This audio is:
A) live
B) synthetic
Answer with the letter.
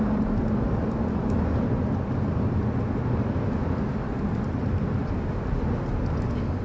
A